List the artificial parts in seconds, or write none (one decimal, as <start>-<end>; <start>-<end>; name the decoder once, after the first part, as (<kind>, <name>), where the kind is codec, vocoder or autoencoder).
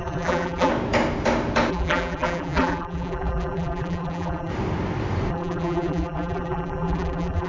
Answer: 0.0-0.7 (vocoder, BigVGAN v2); 1.7-4.5; 5.3-7.5